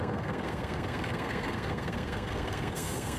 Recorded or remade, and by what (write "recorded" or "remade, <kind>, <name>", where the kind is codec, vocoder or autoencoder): remade, codec, SNAC